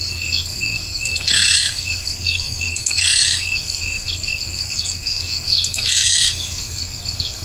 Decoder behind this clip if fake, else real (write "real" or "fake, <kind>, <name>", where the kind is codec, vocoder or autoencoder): fake, codec, SNAC